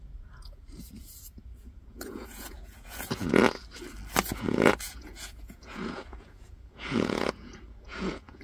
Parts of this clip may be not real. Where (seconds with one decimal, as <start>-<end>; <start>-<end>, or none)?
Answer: 0.0-3.4; 4.3-8.4